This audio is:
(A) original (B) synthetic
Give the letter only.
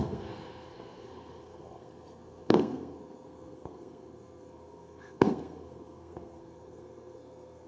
B